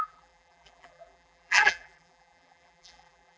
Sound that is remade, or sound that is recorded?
remade